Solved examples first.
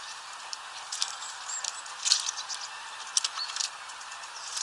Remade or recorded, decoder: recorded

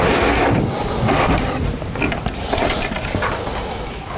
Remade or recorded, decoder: recorded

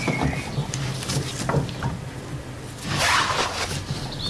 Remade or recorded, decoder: recorded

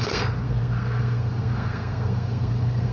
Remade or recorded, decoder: remade, codec, SNAC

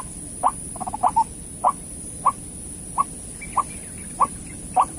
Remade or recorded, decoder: recorded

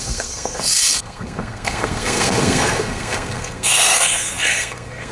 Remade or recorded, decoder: remade, codec, SNAC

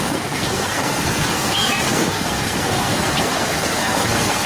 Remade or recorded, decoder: remade, codec, SNAC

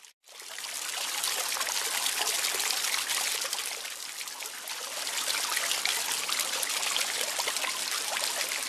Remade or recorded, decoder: recorded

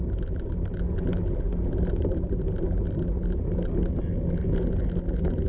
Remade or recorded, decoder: recorded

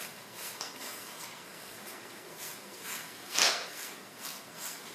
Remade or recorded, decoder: remade, codec, SNAC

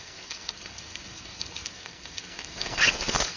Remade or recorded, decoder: remade, codec, SNAC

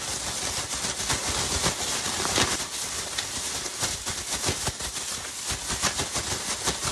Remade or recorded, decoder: recorded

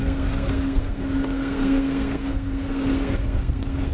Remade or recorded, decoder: remade, codec, SNAC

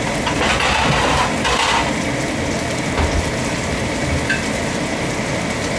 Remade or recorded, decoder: recorded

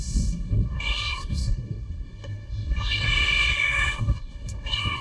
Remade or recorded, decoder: remade, codec, SNAC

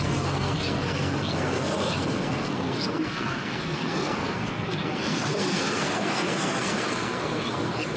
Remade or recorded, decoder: remade, codec, SNAC